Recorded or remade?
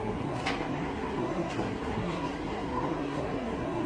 remade